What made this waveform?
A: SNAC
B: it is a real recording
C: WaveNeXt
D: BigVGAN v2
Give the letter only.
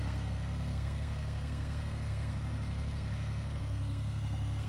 A